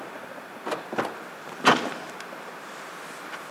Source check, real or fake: real